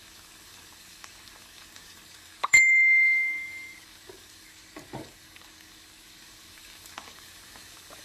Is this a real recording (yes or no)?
no